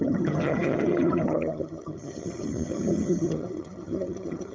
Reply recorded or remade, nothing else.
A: remade